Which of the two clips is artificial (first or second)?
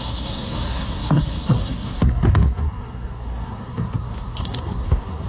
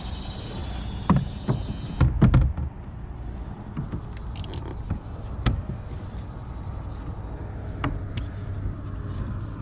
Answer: first